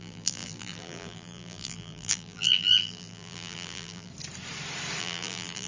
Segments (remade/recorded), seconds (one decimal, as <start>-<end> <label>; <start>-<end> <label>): 0.0-4.1 remade; 4.1-5.0 recorded; 5.0-5.7 remade